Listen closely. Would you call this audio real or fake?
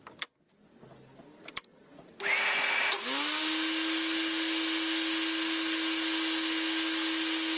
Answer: real